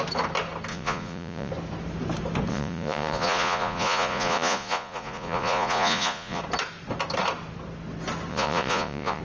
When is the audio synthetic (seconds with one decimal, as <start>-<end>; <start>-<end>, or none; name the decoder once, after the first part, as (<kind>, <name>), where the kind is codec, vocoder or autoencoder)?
0.7-1.5 (vocoder, Vocos); 2.5-6.4; 8.3-9.2